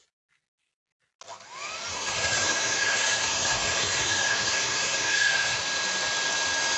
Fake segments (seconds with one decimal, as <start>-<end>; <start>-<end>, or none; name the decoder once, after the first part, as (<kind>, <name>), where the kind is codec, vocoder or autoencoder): 1.9-5.6 (codec, SNAC)